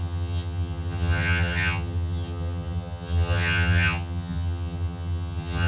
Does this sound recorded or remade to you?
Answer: remade